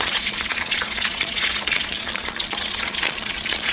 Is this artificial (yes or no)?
yes